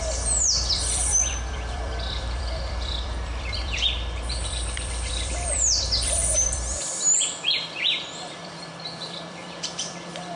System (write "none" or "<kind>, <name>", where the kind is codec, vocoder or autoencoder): vocoder, BigVGAN v2